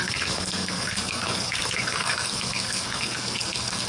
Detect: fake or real fake